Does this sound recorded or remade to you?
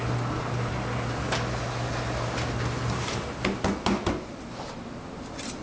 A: recorded